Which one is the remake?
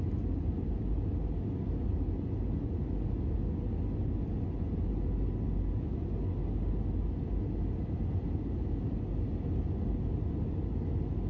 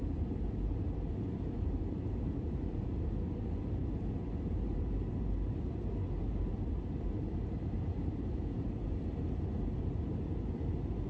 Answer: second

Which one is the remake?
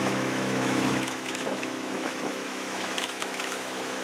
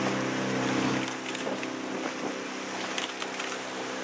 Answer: first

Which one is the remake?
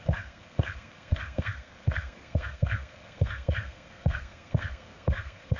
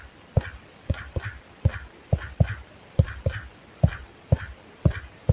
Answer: first